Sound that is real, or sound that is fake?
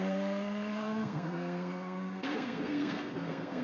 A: fake